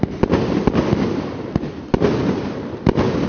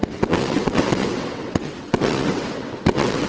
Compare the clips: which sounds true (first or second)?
first